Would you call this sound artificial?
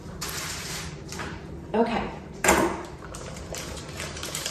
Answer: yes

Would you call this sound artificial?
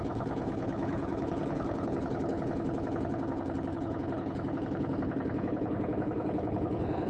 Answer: yes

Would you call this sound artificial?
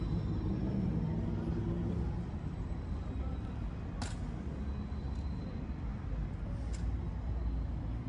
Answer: no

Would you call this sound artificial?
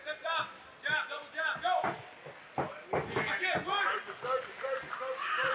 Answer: no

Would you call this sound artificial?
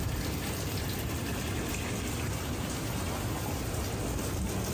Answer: no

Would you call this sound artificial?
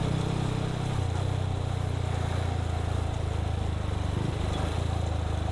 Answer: no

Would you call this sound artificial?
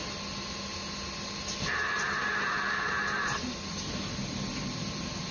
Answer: no